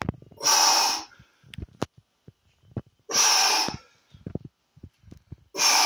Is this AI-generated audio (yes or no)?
no